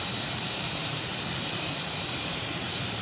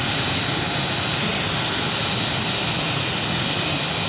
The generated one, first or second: first